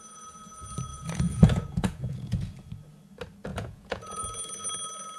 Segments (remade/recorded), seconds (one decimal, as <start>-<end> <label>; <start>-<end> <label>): 0.0-0.9 recorded; 0.9-2.5 remade; 2.5-3.5 recorded; 3.5-4.2 remade; 4.2-5.2 recorded